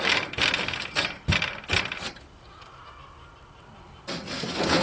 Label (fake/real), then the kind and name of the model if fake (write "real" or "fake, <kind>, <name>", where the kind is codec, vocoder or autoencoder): real